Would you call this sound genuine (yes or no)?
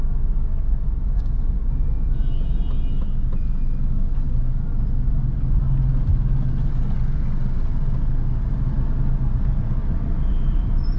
yes